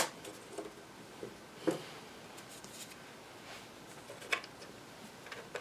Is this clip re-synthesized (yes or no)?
no